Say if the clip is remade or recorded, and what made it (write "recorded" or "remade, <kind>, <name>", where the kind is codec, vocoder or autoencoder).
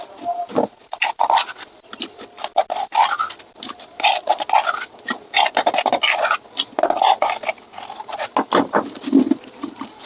recorded